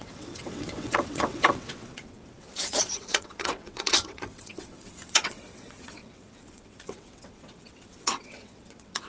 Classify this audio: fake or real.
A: fake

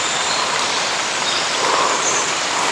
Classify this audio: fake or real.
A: real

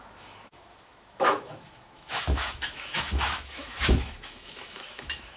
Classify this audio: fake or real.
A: fake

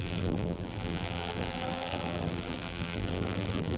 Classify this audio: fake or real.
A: fake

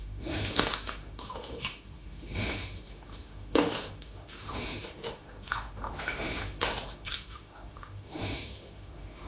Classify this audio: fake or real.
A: fake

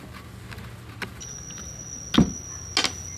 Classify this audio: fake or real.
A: real